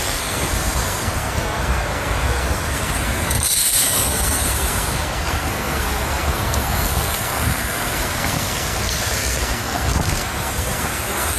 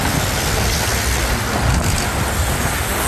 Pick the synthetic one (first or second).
first